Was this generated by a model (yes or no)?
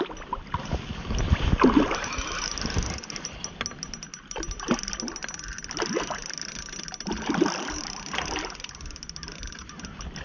no